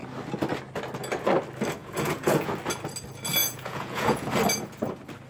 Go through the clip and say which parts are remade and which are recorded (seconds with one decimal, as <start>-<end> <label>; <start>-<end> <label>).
0.0-1.8 recorded; 1.8-2.5 remade; 2.5-3.4 recorded; 3.4-4.3 remade; 4.3-5.3 recorded